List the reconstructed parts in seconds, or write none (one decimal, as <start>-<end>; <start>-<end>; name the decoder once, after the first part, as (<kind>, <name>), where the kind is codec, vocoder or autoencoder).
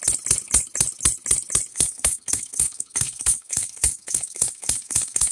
1.7-5.3 (codec, SNAC)